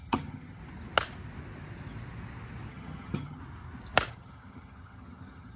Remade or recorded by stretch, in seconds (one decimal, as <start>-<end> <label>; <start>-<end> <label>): 0.0-0.6 remade; 0.6-2.7 recorded; 2.7-3.4 remade; 3.4-4.1 recorded; 4.1-5.6 remade